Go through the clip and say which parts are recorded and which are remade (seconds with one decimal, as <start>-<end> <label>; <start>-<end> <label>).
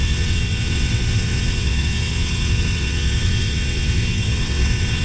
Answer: 0.0-5.0 remade